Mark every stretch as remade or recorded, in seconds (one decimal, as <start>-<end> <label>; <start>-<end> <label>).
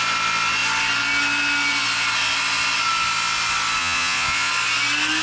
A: 0.0-3.8 recorded; 3.8-4.5 remade; 4.5-5.2 recorded